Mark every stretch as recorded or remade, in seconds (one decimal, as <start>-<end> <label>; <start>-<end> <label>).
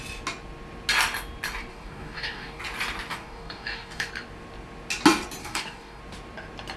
0.0-1.7 recorded; 1.7-2.6 remade; 2.6-3.1 recorded; 3.1-4.1 remade; 4.1-5.4 recorded; 5.4-6.0 remade; 6.0-6.8 recorded